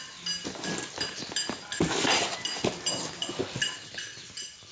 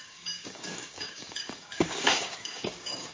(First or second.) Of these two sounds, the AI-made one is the second